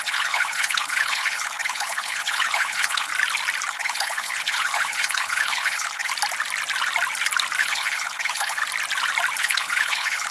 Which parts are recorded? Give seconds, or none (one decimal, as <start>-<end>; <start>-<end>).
3.1-3.7; 6.1-7.6; 8.6-9.4